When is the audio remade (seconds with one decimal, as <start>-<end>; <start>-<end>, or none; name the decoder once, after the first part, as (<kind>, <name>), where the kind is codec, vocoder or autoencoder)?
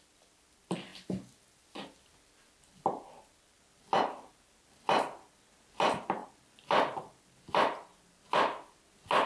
none